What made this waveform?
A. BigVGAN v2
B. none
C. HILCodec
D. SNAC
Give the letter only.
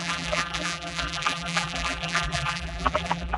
A